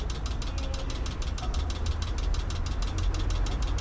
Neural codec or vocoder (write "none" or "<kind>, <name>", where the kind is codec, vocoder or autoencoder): none